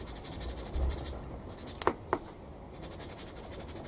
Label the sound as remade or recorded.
recorded